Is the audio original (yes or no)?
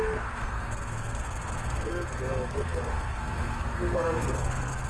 no